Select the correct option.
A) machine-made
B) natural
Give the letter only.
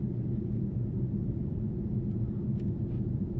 B